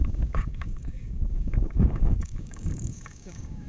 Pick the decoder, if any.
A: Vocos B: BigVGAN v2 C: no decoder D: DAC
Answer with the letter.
D